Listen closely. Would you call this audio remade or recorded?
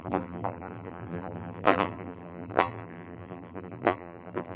remade